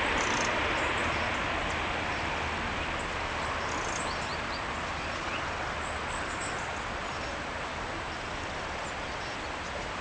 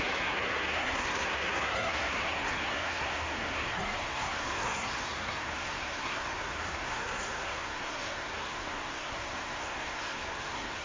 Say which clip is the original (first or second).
first